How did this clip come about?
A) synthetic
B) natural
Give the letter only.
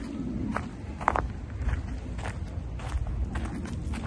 B